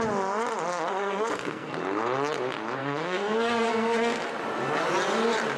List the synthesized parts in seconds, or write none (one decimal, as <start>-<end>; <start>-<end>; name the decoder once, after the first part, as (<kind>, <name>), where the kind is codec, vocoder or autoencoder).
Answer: 0.7-1.7 (codec, SNAC); 2.8-4.3